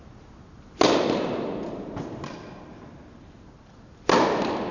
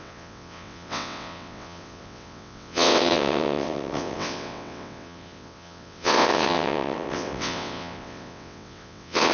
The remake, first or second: second